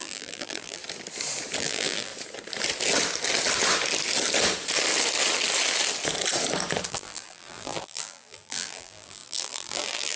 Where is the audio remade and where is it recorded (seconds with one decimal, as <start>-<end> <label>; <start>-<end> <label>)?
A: 0.0-0.8 remade; 0.8-1.6 recorded; 1.6-2.1 remade; 2.1-6.9 recorded; 6.9-10.2 remade